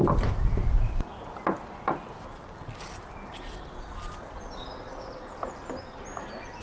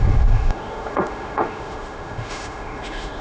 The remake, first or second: second